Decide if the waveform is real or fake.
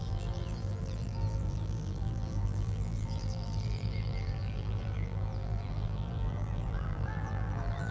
fake